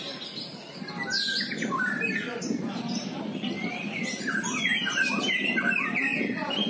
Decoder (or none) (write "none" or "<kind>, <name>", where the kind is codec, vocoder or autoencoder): vocoder, BigVGAN v2